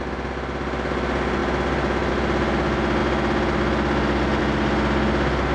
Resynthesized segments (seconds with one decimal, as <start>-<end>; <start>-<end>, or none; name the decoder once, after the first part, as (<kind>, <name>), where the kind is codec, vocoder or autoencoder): none